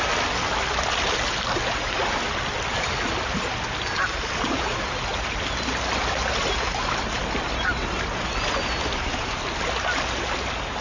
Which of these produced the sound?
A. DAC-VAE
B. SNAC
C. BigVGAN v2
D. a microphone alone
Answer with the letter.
D